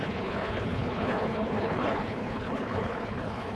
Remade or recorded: remade